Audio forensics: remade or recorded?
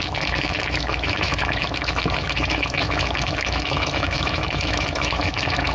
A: remade